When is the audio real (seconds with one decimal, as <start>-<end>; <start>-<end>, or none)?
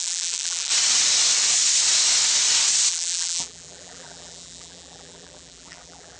0.7-2.9